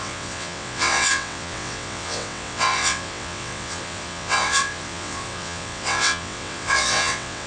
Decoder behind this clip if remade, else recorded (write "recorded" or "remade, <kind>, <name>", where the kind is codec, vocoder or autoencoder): remade, vocoder, WaveNeXt